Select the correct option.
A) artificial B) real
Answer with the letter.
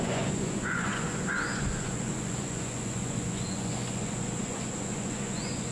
A